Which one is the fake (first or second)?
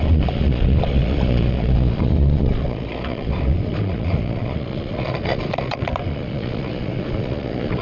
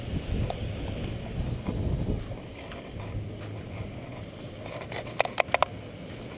first